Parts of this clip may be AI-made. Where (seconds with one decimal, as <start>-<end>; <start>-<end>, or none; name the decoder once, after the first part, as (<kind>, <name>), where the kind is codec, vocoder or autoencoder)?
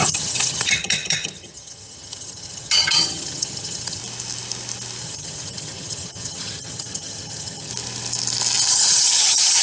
0.0-4.0 (vocoder, HiFi-GAN); 5.0-7.7; 8.7-9.6